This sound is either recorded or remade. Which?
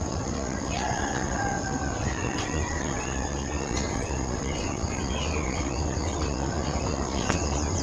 remade